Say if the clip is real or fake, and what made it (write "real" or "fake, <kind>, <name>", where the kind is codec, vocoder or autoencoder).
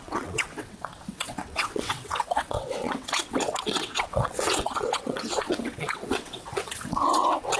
fake, vocoder, WaveNeXt